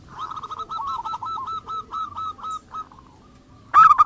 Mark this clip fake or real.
real